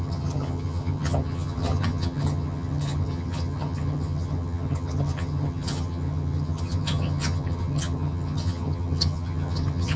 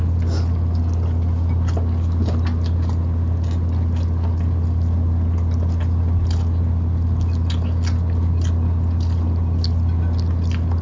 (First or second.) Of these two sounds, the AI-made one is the first